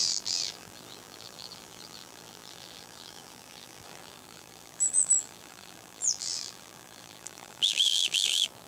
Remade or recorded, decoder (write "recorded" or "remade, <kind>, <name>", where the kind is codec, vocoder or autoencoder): remade, vocoder, BigVGAN v2